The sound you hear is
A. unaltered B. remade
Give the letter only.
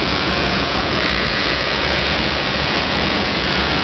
B